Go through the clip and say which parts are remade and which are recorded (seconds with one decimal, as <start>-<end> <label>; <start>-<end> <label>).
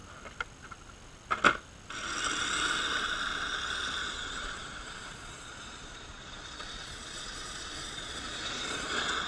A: 0.0-4.0 recorded; 4.0-9.3 remade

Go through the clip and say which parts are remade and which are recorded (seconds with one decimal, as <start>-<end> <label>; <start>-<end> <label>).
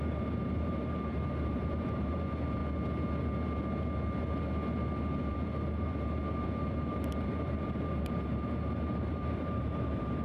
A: 0.0-2.6 remade; 2.6-5.3 recorded; 5.3-10.2 remade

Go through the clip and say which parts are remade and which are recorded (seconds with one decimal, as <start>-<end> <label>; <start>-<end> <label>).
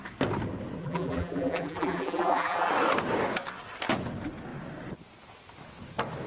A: 0.0-0.8 recorded; 0.8-2.7 remade; 2.7-6.3 recorded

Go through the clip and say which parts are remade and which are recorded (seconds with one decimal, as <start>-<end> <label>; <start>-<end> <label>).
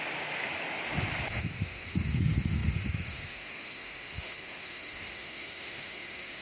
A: 0.0-0.4 remade; 0.4-1.3 recorded; 1.3-6.4 remade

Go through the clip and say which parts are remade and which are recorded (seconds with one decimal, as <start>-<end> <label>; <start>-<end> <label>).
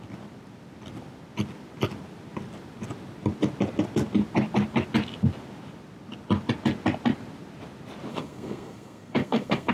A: 0.0-8.1 recorded; 8.1-9.7 remade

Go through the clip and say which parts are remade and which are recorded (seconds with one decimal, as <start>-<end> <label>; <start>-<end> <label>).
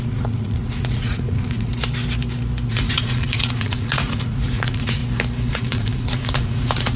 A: 0.0-1.7 remade; 1.7-2.7 recorded; 2.7-5.0 remade; 5.0-5.5 recorded; 5.5-7.0 remade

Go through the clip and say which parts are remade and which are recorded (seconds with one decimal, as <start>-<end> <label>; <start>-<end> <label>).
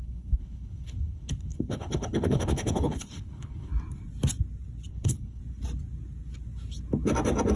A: 0.0-3.7 remade; 3.7-4.9 recorded; 4.9-5.4 remade; 5.4-7.6 recorded